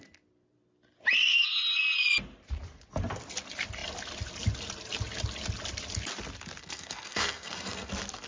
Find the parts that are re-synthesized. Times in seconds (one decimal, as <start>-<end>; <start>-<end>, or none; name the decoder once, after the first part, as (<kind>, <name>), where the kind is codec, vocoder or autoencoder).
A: 6.6-7.9 (codec, SNAC)

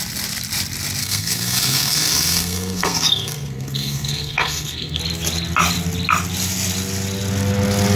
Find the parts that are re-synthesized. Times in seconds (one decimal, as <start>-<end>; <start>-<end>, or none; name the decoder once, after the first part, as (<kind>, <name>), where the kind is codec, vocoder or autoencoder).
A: 1.0-5.0 (codec, SNAC)

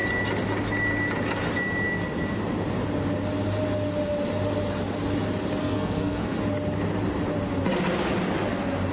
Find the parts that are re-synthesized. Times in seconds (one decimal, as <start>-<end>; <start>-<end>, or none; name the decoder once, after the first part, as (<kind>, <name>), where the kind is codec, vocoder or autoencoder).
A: 5.6-6.4 (codec, SNAC)

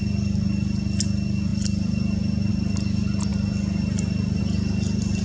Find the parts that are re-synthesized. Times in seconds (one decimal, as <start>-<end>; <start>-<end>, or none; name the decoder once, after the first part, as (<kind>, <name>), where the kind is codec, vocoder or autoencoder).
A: none

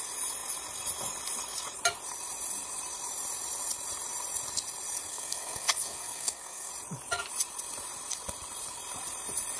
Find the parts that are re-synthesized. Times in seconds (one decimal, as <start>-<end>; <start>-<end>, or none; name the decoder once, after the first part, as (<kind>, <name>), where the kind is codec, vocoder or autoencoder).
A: 5.1-6.7 (codec, SNAC)

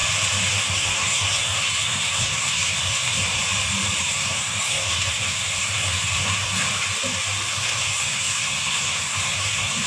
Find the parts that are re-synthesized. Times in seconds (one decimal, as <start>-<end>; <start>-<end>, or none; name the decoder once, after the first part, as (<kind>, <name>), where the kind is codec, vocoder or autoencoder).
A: 0.5-3.4 (codec, SNAC); 4.0-6.7; 7.5-9.9

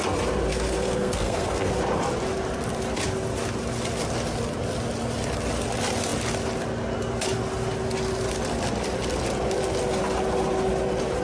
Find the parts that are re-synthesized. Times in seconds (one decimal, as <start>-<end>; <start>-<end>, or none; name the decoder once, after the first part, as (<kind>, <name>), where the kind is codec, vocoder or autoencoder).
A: 0.5-1.7 (codec, SNAC)